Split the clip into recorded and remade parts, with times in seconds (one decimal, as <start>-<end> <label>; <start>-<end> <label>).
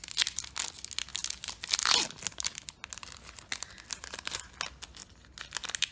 0.0-5.9 recorded